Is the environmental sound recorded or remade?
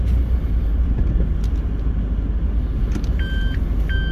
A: recorded